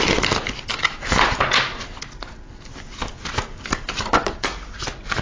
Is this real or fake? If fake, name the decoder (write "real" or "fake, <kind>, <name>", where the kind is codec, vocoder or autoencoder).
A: real